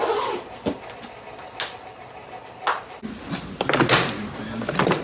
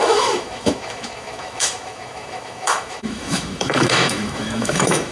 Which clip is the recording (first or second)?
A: first